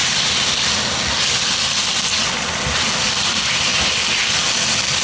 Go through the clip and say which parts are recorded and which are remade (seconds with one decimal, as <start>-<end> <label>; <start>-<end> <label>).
0.0-5.0 recorded